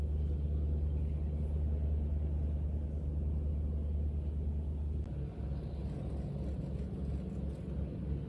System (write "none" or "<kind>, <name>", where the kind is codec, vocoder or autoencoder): none